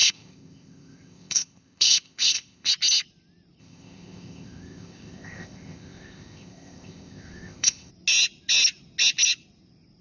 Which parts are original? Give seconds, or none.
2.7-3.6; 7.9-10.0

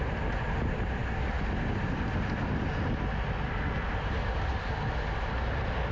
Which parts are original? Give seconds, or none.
0.0-5.9

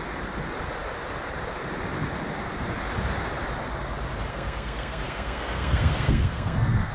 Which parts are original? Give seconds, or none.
0.0-4.3

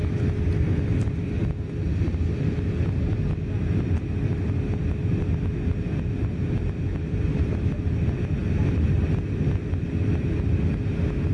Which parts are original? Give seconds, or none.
0.0-11.3

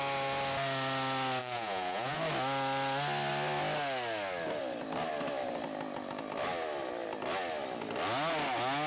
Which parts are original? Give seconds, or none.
0.0-1.4; 2.2-8.9

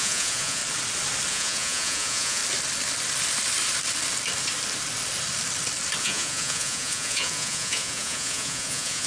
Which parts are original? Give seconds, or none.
0.6-1.3; 2.4-6.0

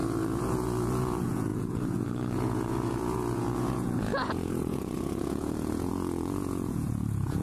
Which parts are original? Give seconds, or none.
none